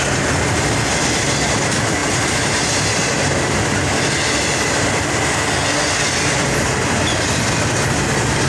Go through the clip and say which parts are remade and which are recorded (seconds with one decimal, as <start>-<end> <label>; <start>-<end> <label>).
0.0-8.5 recorded